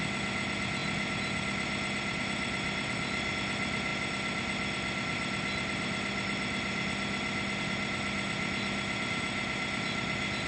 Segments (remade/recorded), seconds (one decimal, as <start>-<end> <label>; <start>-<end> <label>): 0.0-10.5 recorded